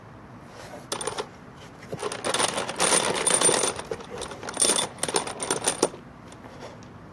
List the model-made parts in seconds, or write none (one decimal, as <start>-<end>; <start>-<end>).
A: none